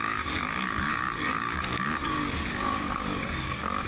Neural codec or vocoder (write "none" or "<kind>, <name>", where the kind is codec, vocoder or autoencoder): codec, DAC